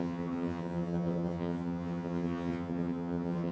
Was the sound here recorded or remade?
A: remade